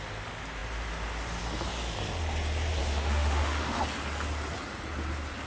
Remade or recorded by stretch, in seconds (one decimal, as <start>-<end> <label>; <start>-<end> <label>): 0.0-2.8 recorded; 2.8-3.8 remade; 3.8-5.5 recorded